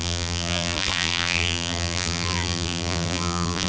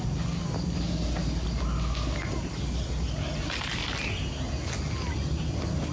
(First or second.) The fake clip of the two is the first